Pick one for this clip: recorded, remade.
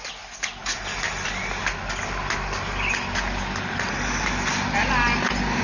recorded